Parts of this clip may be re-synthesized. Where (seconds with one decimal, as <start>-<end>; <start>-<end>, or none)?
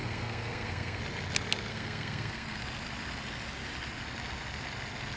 0.0-1.0; 1.7-2.6